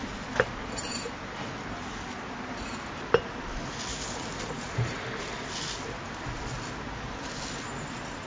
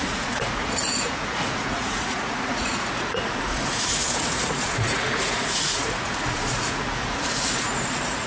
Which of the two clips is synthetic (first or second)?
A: second